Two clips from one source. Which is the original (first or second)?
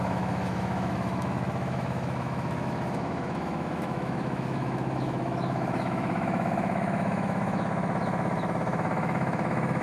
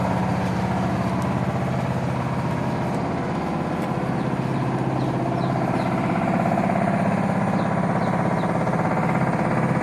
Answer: second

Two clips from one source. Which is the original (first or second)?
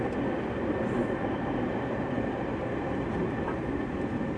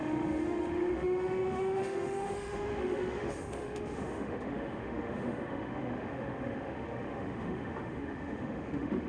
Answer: first